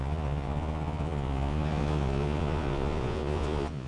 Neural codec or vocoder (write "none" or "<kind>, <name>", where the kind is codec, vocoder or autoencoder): vocoder, Vocos